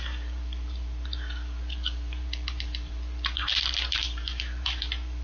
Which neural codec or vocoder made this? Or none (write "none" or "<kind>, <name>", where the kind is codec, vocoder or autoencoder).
vocoder, BigVGAN v2